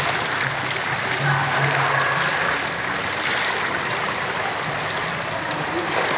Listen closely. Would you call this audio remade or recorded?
recorded